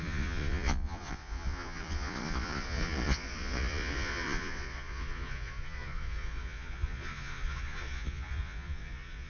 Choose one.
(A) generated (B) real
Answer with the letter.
A